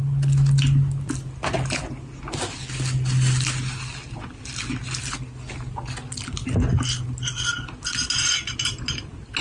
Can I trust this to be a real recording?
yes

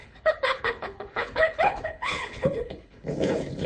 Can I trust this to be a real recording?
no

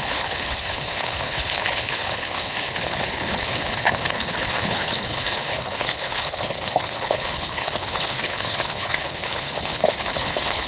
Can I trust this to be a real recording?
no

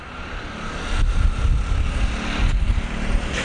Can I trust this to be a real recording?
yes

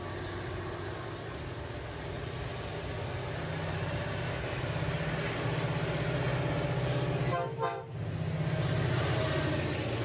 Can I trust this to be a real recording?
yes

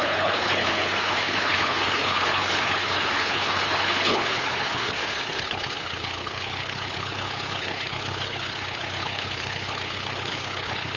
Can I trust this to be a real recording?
no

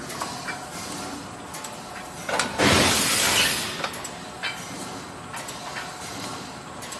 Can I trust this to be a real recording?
yes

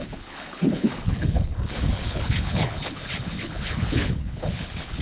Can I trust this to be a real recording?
no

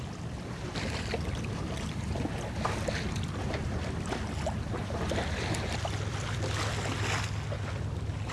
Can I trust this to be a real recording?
yes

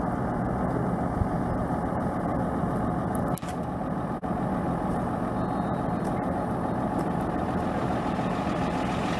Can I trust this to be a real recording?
yes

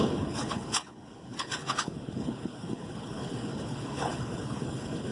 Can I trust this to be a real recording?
no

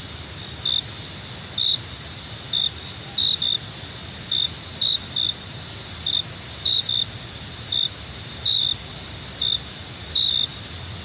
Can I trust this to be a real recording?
yes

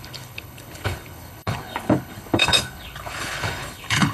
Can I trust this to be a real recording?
no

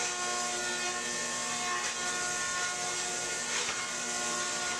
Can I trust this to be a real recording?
yes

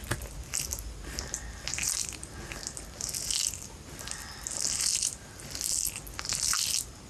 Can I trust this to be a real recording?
yes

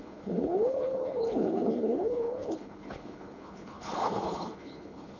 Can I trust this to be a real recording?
no